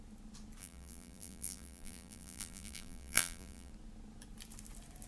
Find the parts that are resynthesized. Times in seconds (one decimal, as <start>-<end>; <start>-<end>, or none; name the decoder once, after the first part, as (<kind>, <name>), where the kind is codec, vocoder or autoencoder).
0.6-3.7 (vocoder, BigVGAN v2)